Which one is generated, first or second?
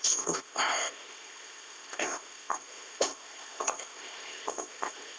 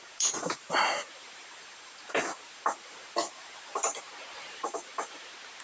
first